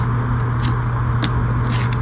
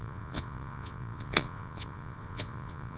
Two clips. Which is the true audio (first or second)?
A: first